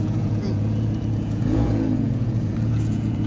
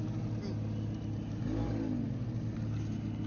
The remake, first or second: first